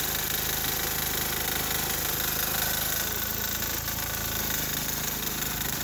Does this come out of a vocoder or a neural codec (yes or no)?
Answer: no